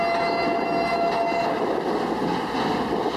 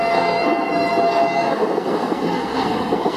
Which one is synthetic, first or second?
second